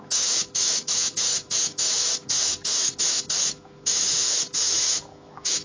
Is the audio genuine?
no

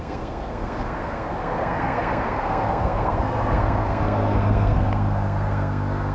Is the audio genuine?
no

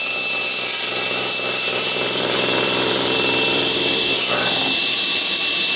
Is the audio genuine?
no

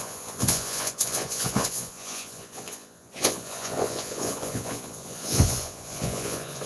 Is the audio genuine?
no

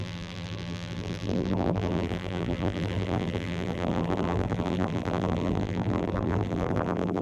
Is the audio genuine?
no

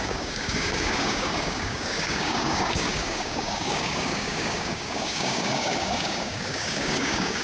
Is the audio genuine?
no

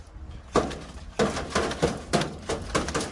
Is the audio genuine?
yes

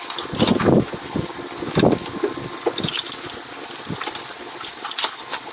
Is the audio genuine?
yes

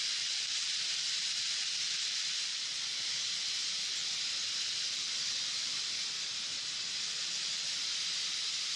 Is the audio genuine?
no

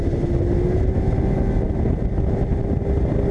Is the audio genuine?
yes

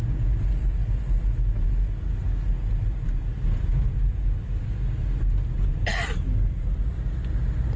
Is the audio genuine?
yes